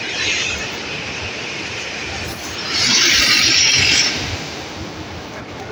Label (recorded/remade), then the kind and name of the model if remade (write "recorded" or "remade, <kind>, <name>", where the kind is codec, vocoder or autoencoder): remade, vocoder, BigVGAN v2